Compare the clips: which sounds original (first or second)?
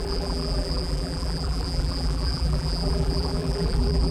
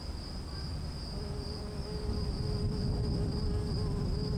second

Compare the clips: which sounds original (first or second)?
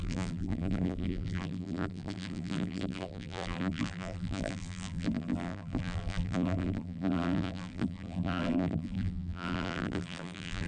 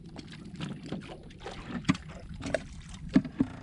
second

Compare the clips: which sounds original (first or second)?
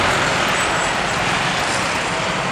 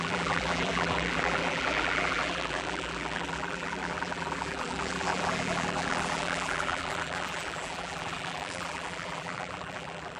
first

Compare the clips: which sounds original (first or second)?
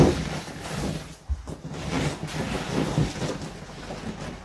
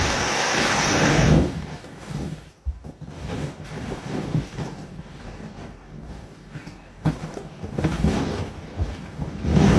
first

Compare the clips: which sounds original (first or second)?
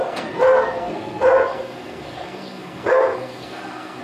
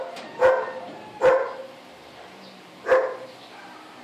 second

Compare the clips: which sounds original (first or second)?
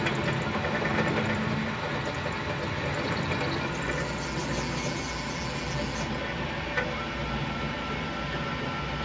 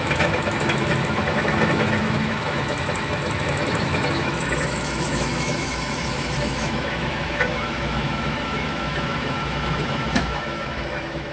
first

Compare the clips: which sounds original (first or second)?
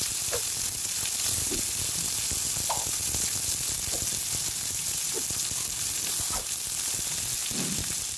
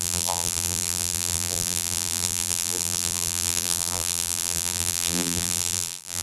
first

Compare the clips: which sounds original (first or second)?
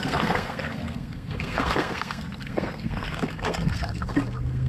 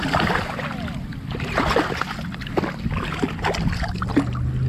second